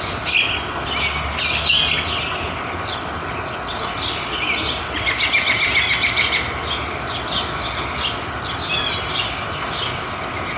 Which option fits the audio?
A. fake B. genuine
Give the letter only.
B